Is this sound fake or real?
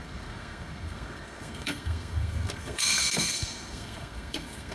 fake